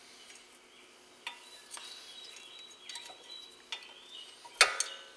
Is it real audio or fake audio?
real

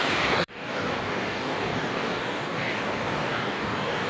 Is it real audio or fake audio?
fake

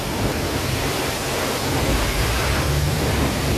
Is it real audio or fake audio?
fake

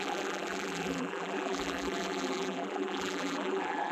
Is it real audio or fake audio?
fake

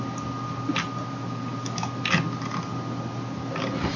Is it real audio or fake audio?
real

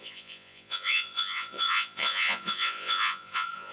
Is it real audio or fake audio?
fake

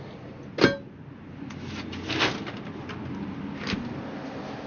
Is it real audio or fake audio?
real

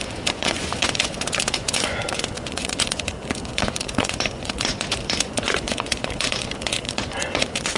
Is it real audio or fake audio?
fake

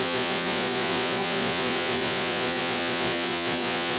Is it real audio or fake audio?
fake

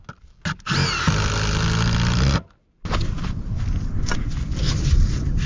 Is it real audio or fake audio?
real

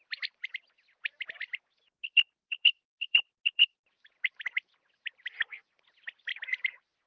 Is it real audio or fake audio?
real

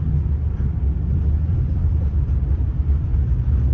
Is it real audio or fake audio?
real